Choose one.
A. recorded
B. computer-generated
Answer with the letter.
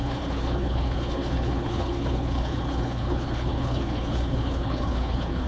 B